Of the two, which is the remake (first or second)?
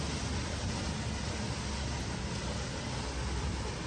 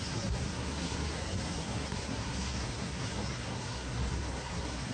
second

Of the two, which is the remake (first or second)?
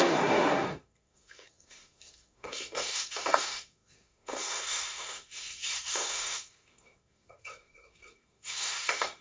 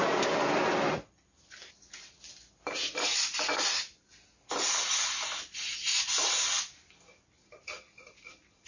first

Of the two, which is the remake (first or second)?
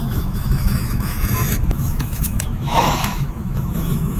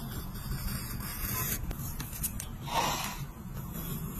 first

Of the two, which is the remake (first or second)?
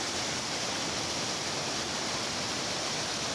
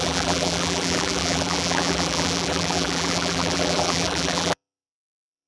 second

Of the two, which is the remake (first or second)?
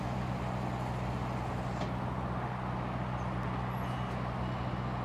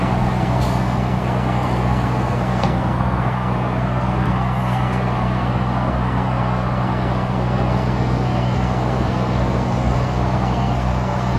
second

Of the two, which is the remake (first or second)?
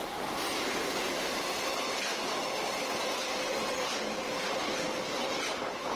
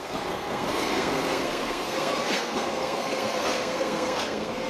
second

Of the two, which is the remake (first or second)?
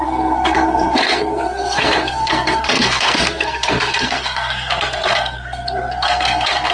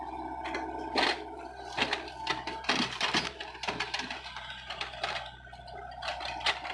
first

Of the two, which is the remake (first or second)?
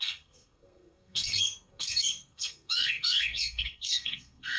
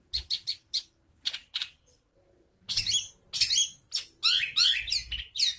first